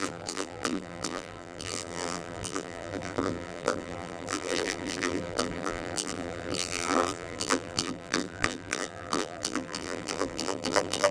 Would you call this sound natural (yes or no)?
no